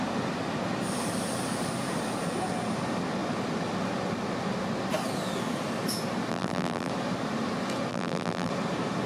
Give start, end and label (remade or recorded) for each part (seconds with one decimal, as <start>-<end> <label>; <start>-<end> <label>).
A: 0.0-6.3 recorded; 6.3-6.9 remade; 6.9-7.9 recorded; 7.9-8.5 remade; 8.5-9.1 recorded